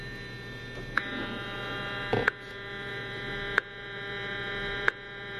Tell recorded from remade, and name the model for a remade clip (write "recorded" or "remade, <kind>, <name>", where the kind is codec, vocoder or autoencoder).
remade, vocoder, Vocos